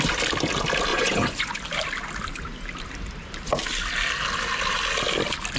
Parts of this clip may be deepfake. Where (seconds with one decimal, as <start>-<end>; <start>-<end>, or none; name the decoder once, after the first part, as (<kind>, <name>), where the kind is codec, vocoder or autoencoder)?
0.9-1.6 (vocoder, Vocos)

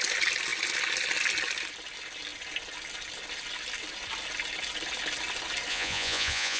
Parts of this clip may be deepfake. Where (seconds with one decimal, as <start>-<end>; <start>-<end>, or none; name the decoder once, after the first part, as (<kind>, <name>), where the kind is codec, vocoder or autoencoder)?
5.7-6.6 (vocoder, Vocos)